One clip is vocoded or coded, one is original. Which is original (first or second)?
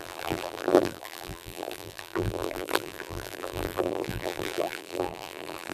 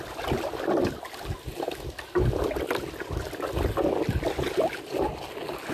second